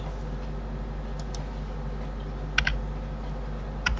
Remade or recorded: recorded